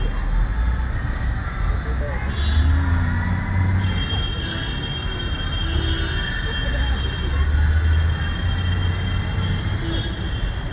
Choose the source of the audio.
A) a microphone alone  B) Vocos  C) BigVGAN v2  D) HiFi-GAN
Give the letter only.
A